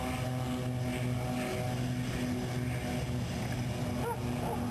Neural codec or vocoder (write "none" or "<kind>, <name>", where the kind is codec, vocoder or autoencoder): none